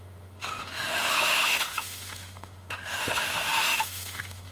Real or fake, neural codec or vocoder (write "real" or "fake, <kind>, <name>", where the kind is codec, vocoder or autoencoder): fake, autoencoder, DAC-VAE